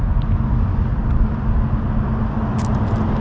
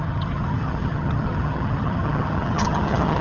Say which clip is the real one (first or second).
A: first